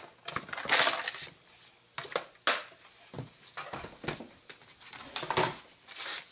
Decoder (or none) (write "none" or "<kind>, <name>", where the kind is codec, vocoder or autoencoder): none